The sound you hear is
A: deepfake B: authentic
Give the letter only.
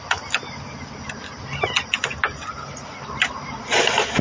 B